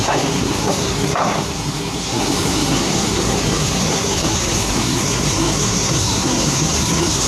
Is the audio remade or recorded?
remade